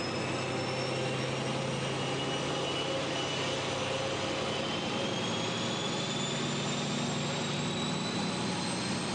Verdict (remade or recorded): recorded